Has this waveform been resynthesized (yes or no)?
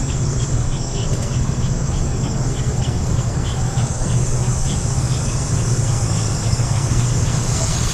yes